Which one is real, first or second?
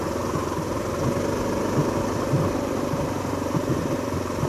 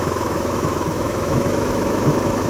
first